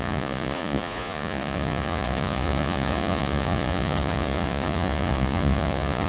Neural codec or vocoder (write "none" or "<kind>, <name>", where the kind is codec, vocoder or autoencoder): vocoder, Vocos